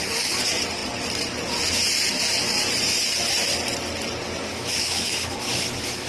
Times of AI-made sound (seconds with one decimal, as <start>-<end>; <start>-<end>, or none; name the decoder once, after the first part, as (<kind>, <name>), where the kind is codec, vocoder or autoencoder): 4.5-6.1 (autoencoder, DAC-VAE)